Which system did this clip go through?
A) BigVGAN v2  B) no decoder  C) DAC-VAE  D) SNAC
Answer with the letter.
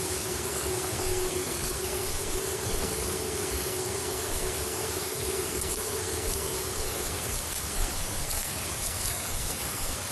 D